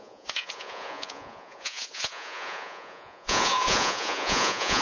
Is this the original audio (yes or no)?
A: no